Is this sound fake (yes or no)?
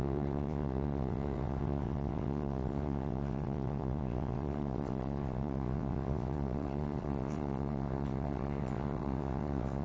yes